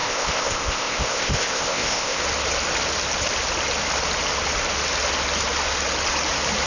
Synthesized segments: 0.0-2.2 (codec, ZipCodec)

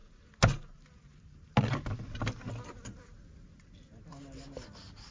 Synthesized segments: none

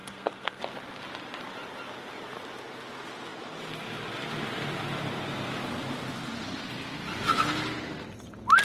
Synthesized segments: 0.0-0.6 (codec, SNAC)